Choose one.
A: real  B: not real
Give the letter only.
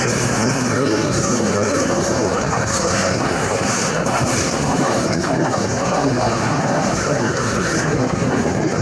B